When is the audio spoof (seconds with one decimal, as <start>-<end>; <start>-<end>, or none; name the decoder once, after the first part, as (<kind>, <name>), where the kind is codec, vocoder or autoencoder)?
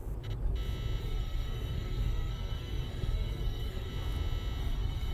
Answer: 1.0-3.9 (codec, SNAC); 4.6-5.1